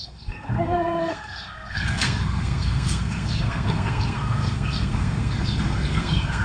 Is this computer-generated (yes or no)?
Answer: yes